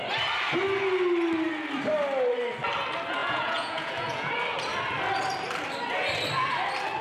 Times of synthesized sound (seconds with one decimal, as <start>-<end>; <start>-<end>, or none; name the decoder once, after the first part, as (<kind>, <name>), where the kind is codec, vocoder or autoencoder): 3.2-4.3 (vocoder, Vocos)